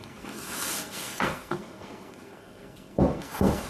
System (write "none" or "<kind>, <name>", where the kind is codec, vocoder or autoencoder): codec, SNAC